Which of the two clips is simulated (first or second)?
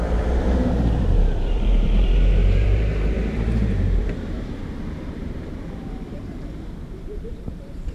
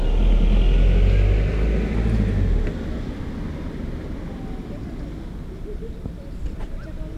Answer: first